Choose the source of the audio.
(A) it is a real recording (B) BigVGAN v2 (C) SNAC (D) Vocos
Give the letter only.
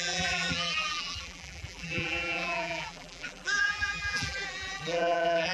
B